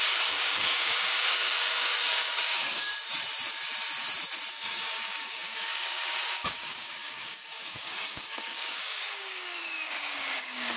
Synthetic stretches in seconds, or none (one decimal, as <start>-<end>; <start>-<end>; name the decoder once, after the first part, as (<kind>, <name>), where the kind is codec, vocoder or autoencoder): 0.0-2.9 (codec, DAC); 4.5-10.8